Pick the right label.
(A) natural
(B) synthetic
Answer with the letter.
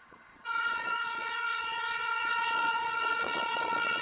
B